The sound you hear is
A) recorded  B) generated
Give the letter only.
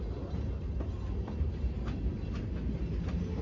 A